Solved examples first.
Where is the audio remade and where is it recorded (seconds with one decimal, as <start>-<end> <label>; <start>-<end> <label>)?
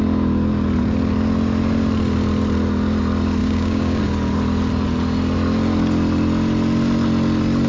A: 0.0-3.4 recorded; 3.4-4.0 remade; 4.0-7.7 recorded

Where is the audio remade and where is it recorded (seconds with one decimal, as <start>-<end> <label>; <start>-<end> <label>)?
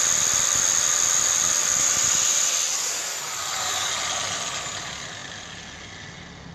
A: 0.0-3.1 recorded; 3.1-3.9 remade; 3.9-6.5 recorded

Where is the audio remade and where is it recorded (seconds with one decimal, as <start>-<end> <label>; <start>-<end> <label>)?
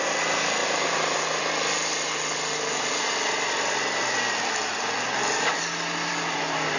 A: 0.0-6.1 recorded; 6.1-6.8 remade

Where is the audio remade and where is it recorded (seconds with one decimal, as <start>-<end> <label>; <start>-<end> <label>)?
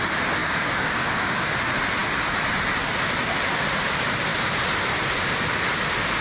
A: 0.0-0.4 recorded; 0.4-1.5 remade; 1.5-6.2 recorded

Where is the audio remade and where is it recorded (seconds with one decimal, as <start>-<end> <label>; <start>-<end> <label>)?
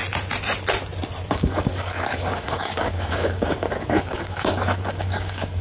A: 0.0-1.3 recorded; 1.3-5.6 remade